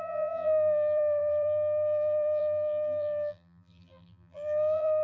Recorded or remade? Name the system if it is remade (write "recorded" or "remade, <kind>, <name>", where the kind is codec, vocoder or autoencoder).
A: remade, vocoder, BigVGAN v2